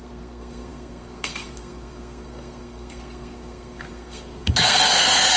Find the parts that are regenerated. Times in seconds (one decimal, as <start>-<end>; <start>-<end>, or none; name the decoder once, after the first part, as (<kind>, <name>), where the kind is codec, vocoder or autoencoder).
0.0-5.4 (codec, SNAC)

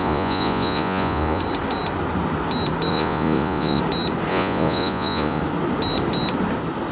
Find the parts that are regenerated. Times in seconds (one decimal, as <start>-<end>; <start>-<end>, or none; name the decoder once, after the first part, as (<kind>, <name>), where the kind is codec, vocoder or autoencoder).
0.0-1.4 (vocoder, Vocos); 2.9-3.8; 4.3-5.4

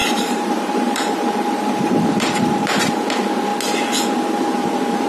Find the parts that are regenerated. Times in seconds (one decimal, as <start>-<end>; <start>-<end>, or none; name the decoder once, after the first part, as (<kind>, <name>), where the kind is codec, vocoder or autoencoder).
0.0-2.9 (vocoder, BigVGAN v2)

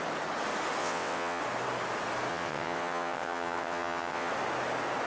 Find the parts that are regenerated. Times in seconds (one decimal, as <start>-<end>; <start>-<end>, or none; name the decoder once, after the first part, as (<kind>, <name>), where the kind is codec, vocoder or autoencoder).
0.8-1.4 (vocoder, WaveNeXt); 2.3-4.3

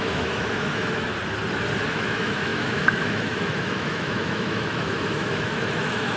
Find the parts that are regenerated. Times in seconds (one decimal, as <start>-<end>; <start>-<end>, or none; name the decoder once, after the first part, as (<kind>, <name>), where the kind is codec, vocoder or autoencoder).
0.0-1.1 (autoencoder, DAC-VAE); 1.9-6.2

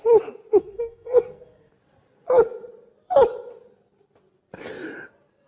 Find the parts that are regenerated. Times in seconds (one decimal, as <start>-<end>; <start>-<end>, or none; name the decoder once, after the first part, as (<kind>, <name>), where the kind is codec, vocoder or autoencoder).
0.6-1.7 (codec, SNAC)

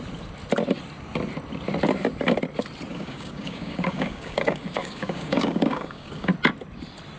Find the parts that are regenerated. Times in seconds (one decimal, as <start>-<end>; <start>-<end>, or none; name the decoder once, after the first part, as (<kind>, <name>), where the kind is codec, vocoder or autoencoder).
2.9-6.3 (codec, DAC)